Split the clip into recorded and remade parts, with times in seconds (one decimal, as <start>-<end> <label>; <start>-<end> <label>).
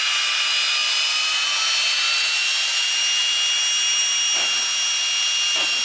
0.0-5.8 recorded